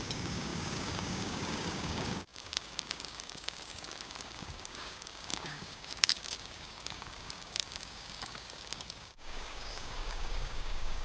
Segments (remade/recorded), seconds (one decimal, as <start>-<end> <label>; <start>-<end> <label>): 0.0-11.0 remade